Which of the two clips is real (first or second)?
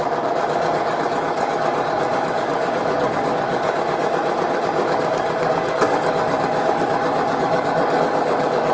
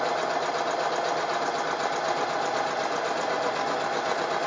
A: second